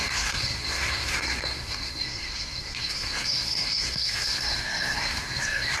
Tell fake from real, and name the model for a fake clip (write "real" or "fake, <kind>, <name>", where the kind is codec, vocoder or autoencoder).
fake, codec, SNAC